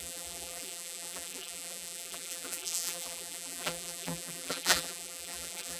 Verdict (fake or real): fake